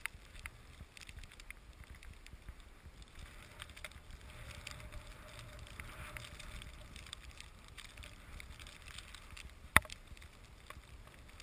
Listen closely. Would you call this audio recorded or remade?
recorded